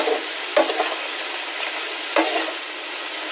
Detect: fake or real real